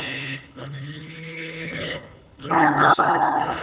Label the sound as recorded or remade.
remade